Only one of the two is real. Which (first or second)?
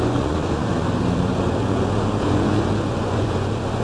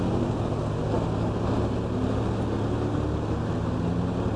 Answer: second